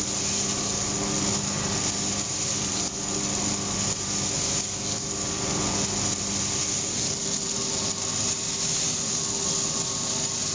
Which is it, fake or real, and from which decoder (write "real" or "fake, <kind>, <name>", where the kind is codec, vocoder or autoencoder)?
real